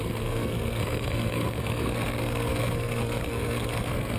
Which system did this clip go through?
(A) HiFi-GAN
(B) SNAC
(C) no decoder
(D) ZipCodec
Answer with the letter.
B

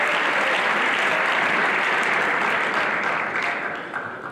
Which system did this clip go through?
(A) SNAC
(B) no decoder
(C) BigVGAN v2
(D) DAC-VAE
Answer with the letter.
B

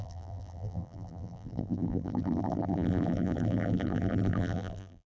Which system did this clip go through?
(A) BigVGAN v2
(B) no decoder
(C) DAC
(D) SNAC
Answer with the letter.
A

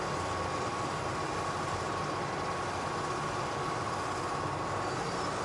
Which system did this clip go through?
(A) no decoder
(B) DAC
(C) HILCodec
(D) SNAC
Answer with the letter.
A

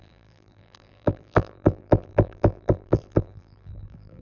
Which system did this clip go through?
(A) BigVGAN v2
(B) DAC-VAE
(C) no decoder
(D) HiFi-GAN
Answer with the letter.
A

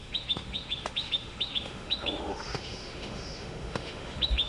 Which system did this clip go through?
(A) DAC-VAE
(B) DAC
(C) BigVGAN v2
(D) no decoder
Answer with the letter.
A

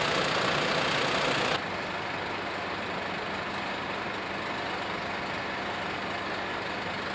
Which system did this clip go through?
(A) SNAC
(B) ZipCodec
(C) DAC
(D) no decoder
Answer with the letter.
D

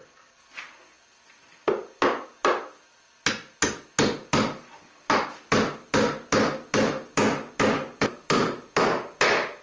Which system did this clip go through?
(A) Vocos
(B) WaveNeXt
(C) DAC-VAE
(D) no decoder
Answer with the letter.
D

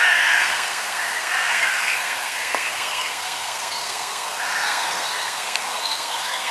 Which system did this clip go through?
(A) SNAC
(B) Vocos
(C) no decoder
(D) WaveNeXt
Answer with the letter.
A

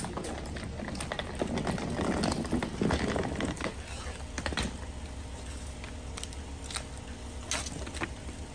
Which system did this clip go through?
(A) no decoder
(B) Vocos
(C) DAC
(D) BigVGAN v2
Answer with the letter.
A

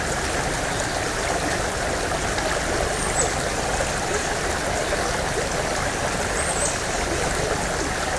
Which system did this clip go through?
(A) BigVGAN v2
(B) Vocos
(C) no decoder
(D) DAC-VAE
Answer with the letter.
C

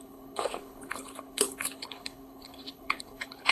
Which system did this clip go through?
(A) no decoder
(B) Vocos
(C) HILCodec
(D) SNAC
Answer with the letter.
C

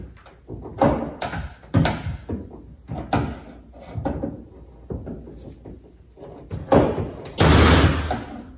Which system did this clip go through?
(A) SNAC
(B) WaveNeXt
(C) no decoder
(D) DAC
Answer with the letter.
C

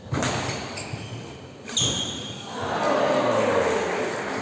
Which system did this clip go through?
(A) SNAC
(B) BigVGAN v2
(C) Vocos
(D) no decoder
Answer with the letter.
D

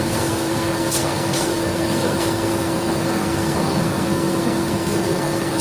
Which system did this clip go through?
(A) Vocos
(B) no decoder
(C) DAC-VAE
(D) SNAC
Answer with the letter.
D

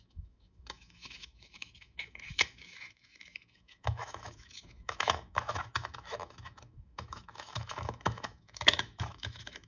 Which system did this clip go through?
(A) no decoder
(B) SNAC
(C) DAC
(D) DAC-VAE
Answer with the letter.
D